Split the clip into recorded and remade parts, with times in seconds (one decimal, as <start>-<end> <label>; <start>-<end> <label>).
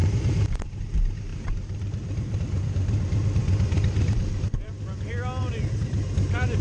0.0-0.8 remade; 0.8-1.3 recorded; 1.3-4.8 remade; 4.8-5.4 recorded; 5.4-6.6 remade